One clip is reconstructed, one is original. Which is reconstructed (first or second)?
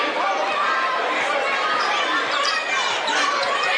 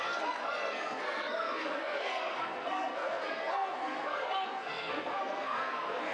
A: second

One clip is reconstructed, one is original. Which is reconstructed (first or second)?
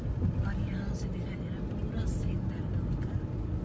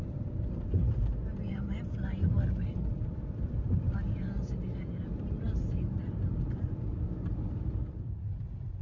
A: second